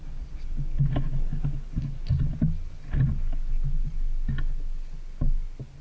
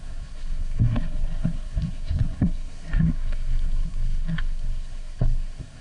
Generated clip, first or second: second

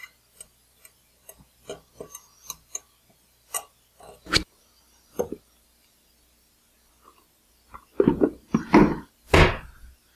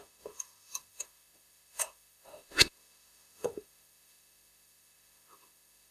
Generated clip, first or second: second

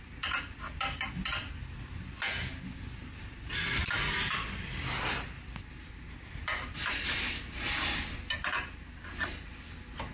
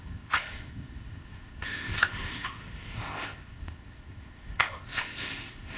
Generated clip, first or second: second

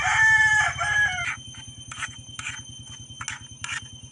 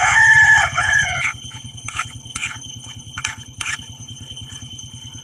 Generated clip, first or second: second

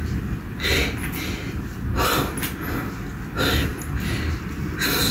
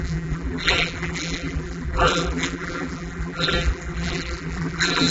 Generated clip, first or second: second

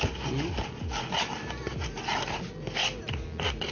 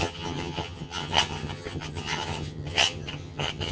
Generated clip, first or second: second